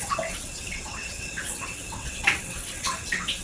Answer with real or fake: fake